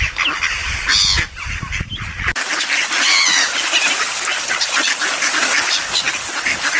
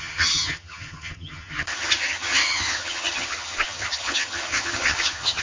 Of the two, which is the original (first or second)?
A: first